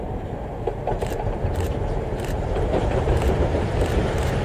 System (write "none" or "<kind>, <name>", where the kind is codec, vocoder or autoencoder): vocoder, BigVGAN v2